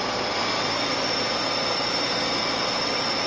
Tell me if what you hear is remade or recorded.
remade